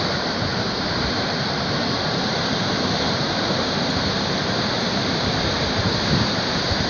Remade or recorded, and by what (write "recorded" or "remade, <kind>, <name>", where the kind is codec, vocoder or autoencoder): remade, vocoder, BigVGAN v2